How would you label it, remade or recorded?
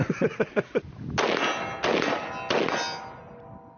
recorded